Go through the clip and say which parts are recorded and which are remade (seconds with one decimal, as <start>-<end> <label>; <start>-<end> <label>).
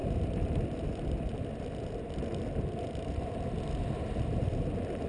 0.0-5.1 recorded